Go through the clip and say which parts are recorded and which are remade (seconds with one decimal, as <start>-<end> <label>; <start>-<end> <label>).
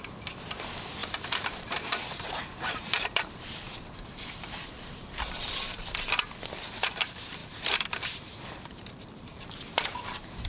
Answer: 0.0-1.0 recorded; 1.0-5.8 remade; 5.8-7.4 recorded; 7.4-10.5 remade